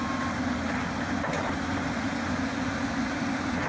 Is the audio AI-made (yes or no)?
no